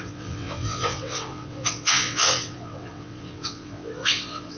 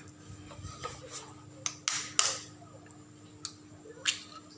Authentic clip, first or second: second